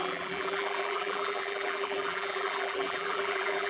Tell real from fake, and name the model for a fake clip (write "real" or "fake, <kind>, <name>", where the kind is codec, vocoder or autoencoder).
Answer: fake, vocoder, BigVGAN v2